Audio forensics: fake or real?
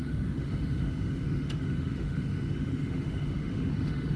fake